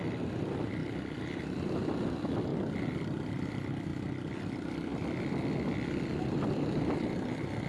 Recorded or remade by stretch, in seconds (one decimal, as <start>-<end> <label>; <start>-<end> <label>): 0.0-0.8 remade; 0.8-1.4 recorded; 1.4-3.9 remade; 3.9-4.4 recorded; 4.4-7.7 remade